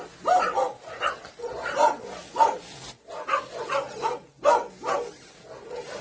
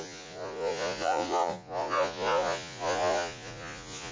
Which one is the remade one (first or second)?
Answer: second